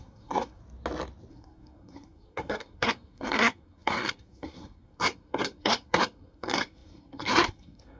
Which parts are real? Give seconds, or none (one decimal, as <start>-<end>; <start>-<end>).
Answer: 0.6-1.3